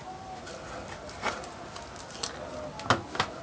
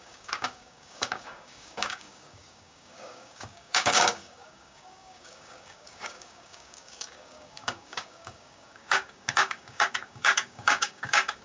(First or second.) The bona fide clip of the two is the first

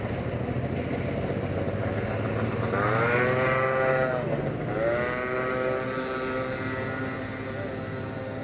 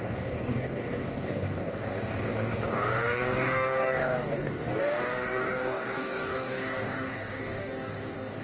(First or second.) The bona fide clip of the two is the first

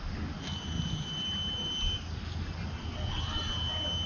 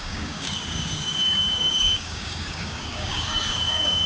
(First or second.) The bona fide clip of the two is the first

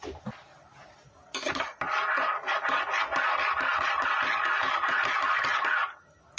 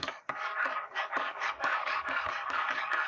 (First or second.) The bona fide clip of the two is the first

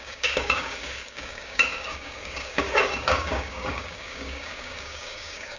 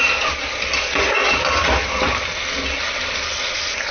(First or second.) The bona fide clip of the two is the second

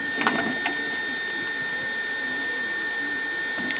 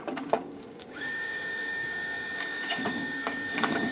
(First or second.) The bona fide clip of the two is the first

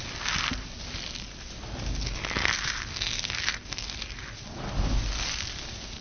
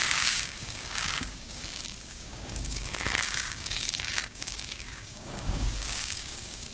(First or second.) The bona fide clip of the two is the first